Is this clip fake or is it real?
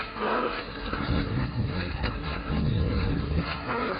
fake